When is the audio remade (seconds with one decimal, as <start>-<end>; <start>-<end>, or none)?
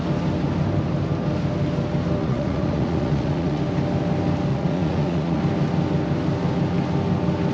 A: 2.2-3.6; 4.5-5.4